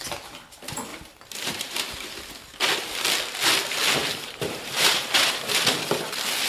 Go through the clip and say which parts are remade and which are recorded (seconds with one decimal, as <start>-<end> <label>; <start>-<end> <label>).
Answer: 0.0-0.9 recorded; 0.9-1.9 remade; 1.9-4.0 recorded; 4.0-5.4 remade; 5.4-6.5 recorded